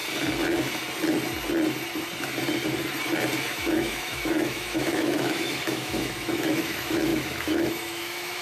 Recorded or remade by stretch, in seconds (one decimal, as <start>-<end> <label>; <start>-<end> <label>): 0.0-3.5 recorded; 3.5-8.4 remade